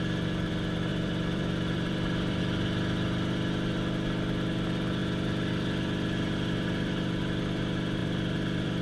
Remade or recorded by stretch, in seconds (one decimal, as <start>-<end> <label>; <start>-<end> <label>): 0.0-0.9 recorded; 0.9-2.4 remade; 2.4-8.0 recorded; 8.0-8.8 remade